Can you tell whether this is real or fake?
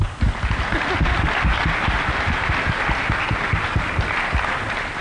real